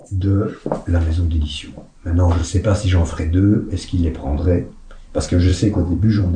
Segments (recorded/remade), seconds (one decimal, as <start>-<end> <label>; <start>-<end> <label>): 0.0-0.6 remade; 0.6-5.5 recorded; 5.5-6.4 remade